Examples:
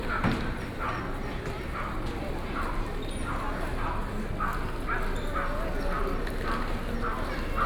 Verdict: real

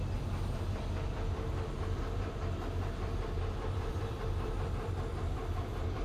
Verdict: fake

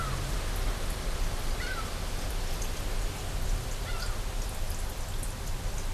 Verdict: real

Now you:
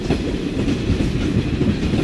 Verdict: fake